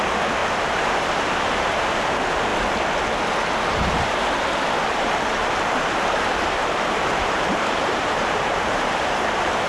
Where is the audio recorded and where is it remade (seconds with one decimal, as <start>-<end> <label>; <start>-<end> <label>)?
0.0-0.4 recorded; 0.4-0.9 remade; 0.9-4.8 recorded; 4.8-9.0 remade; 9.0-9.7 recorded

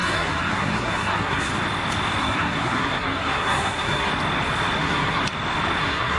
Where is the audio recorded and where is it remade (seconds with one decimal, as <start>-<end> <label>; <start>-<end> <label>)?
0.0-1.5 remade; 1.5-2.2 recorded; 2.2-4.1 remade; 4.1-4.8 recorded; 4.8-5.2 remade; 5.2-5.8 recorded; 5.8-6.2 remade

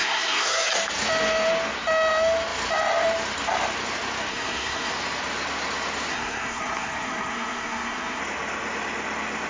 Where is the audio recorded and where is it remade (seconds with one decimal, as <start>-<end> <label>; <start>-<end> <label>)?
0.0-0.7 remade; 0.7-4.3 recorded; 4.3-4.9 remade; 4.9-6.1 recorded; 6.1-8.2 remade; 8.2-9.5 recorded

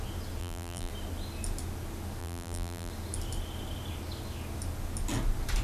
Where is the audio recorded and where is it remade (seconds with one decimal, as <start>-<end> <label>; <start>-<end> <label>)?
0.0-0.4 recorded; 0.4-0.9 remade; 0.9-2.2 recorded; 2.2-2.9 remade; 2.9-5.6 recorded

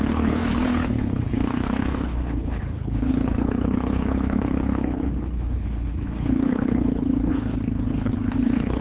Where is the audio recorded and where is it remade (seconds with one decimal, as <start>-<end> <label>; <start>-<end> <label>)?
0.0-8.8 remade

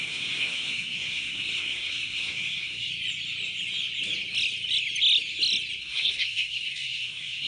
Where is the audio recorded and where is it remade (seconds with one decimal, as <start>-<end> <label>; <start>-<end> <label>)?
0.0-2.9 remade; 2.9-5.8 recorded; 5.8-7.5 remade